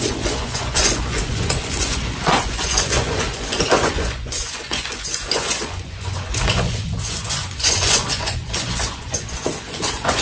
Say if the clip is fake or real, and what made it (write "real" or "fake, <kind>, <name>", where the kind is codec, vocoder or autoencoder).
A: fake, vocoder, Vocos